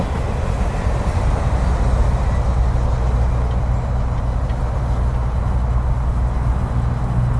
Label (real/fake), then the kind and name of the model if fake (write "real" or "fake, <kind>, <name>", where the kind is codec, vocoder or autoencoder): real